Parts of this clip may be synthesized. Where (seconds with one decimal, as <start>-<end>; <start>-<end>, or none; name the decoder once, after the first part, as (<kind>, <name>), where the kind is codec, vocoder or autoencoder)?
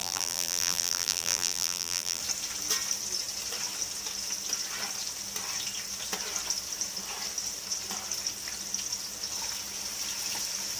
0.0-2.2 (vocoder, BigVGAN v2)